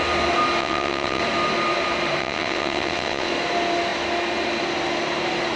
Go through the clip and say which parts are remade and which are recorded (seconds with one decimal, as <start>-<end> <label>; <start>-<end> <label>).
0.0-0.6 recorded; 0.6-1.2 remade; 1.2-2.2 recorded; 2.2-3.3 remade; 3.3-5.6 recorded

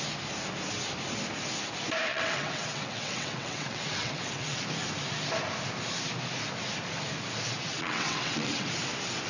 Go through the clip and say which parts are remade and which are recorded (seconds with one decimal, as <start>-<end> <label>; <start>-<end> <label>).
0.0-2.1 recorded; 2.1-4.6 remade; 4.6-7.7 recorded; 7.7-8.7 remade; 8.7-9.3 recorded

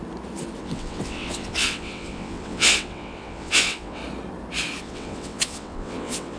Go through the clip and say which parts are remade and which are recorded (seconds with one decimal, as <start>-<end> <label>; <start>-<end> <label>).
0.0-0.6 recorded; 0.6-4.0 remade; 4.0-4.8 recorded; 4.8-6.4 remade